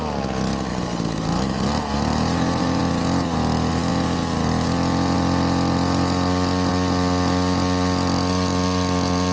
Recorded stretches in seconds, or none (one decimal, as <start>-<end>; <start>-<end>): 0.0-0.7; 2.8-9.3